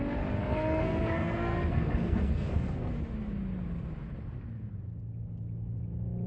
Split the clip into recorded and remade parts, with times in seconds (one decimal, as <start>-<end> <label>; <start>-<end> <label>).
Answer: 0.0-0.4 recorded; 0.4-2.9 remade; 2.9-6.3 recorded